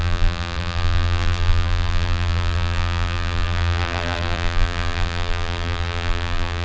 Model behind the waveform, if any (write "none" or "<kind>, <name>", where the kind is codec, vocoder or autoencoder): vocoder, BigVGAN v2